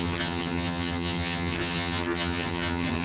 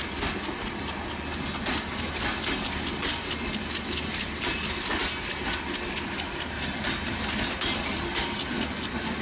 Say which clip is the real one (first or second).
second